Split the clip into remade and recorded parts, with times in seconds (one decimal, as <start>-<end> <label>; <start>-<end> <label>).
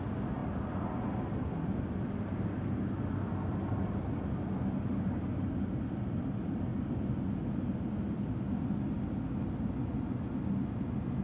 0.0-11.2 recorded